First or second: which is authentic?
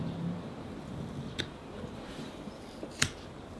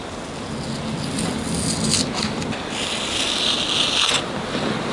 second